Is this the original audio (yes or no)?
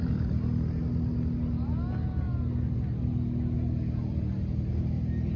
yes